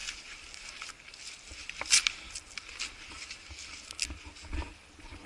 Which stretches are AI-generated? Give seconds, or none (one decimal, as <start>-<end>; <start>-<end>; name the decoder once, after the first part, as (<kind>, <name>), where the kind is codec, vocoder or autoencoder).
none